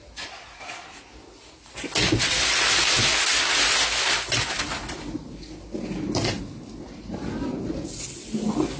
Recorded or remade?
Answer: recorded